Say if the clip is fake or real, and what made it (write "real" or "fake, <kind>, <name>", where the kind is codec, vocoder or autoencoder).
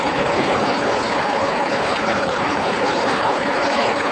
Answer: fake, codec, HILCodec